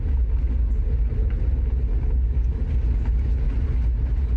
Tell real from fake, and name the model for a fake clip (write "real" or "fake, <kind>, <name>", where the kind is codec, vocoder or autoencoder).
real